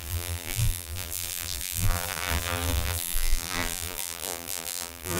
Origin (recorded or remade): remade